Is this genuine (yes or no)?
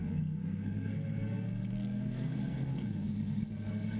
no